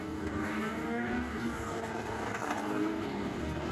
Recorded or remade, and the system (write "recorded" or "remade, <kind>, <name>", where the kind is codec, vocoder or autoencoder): remade, codec, DAC